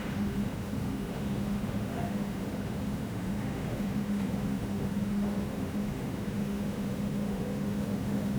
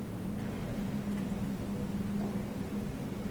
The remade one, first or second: first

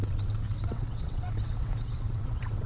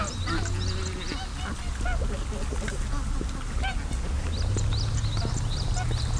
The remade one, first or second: first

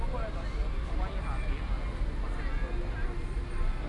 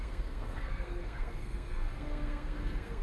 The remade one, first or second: second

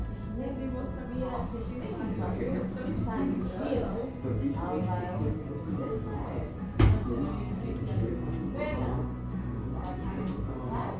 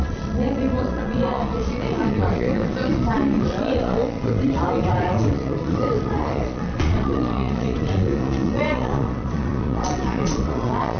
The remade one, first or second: second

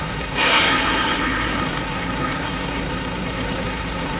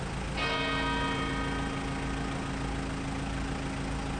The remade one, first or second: first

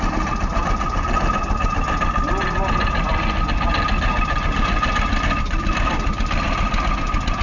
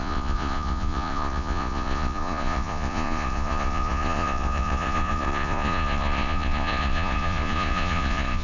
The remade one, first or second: second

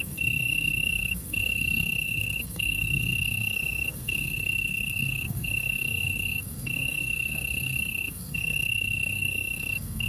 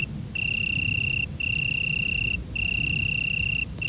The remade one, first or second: first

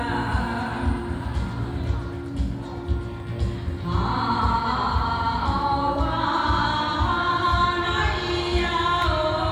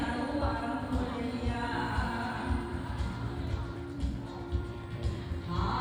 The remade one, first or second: second